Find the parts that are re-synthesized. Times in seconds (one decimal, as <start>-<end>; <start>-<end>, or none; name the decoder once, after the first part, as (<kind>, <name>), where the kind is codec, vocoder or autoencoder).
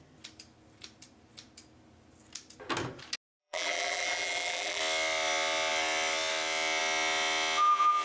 3.4-4.8 (vocoder, BigVGAN v2)